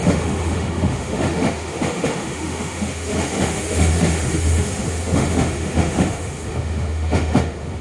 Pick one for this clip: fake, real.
fake